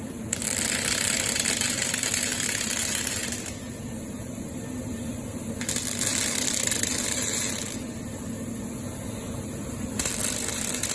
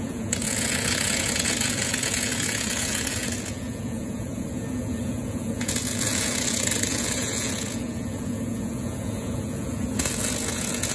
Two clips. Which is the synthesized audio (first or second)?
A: second